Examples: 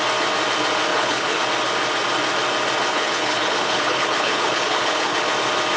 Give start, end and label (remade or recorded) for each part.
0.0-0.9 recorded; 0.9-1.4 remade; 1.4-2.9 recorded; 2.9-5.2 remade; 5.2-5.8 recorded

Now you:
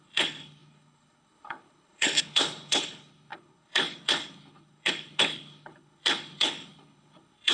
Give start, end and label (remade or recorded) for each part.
0.0-7.5 remade

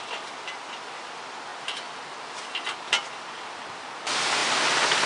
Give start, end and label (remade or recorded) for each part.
0.0-5.1 recorded

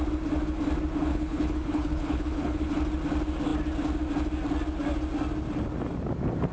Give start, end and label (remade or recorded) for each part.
0.0-1.1 recorded; 1.1-2.7 remade; 2.7-6.5 recorded

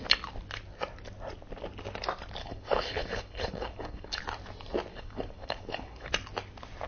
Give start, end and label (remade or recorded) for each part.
0.0-2.4 recorded; 2.4-4.2 remade; 4.2-4.9 recorded; 4.9-6.1 remade; 6.1-6.9 recorded

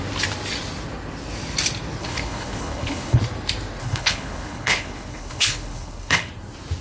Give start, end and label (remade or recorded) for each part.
0.0-2.0 recorded; 2.0-3.2 remade; 3.2-3.8 recorded; 3.8-6.3 remade; 6.3-6.8 recorded

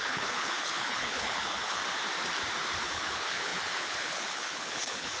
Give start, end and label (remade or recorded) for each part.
0.0-1.8 remade; 1.8-2.8 recorded; 2.8-5.2 remade

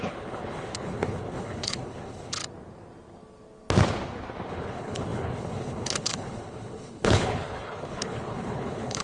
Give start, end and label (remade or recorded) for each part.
0.0-2.4 remade; 2.4-4.5 recorded; 4.5-9.0 remade